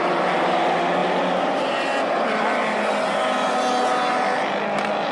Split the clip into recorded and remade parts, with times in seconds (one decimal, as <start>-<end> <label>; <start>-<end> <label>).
0.0-5.1 recorded